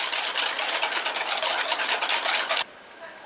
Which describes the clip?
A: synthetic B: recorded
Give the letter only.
B